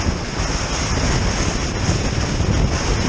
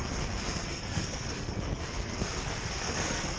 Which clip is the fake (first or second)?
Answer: second